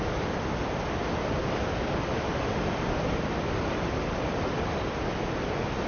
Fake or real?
real